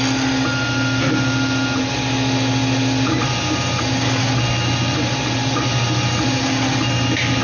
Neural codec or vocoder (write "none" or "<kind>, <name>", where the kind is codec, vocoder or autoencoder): none